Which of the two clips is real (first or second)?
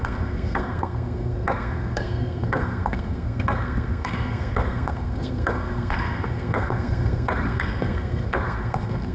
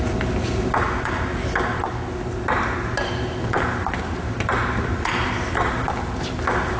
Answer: second